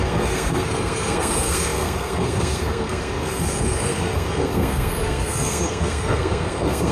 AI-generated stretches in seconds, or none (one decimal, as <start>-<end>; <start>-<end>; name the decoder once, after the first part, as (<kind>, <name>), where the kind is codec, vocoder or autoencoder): 0.0-6.9 (codec, SNAC)